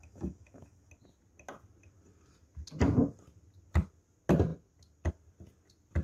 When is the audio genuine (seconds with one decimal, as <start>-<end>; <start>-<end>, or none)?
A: 0.9-6.0